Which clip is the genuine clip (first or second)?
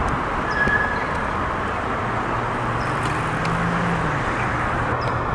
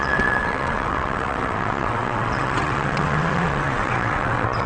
first